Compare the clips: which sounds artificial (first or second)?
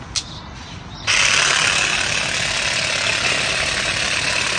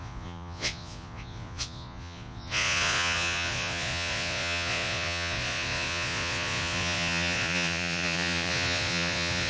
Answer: second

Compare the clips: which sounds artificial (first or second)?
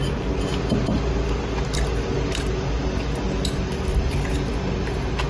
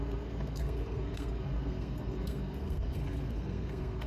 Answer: second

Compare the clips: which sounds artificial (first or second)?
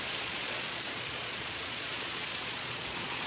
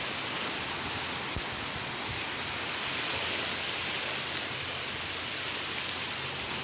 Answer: first